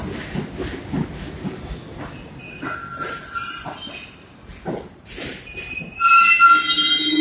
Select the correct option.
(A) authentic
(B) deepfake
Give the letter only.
A